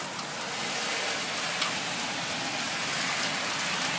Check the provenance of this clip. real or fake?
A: real